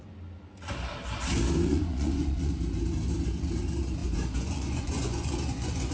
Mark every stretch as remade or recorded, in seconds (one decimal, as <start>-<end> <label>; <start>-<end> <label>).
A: 0.0-1.7 recorded; 1.7-2.5 remade; 2.5-4.0 recorded; 4.0-5.9 remade